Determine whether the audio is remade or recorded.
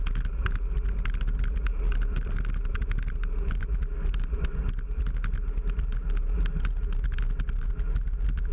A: recorded